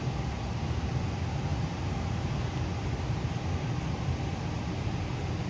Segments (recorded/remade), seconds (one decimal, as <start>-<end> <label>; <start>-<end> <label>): 0.0-1.5 recorded; 1.5-2.4 remade; 2.4-5.5 recorded